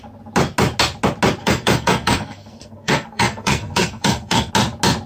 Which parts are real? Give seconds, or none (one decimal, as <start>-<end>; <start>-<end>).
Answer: 0.0-1.4; 4.5-5.1